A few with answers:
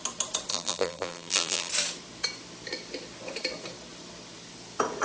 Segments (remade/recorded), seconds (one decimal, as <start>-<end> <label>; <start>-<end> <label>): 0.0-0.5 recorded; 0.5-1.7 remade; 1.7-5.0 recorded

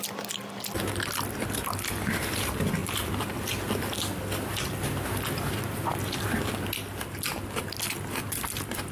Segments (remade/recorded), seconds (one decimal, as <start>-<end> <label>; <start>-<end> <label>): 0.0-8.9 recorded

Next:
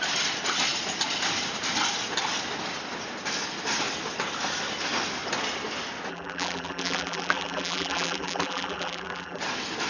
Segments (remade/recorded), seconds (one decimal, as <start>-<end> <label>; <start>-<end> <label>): 0.0-6.1 recorded; 6.1-9.4 remade; 9.4-9.9 recorded

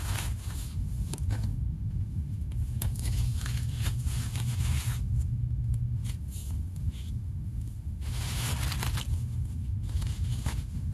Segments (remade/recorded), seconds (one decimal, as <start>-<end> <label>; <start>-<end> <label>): 0.0-8.5 remade; 8.5-9.1 recorded; 9.1-10.9 remade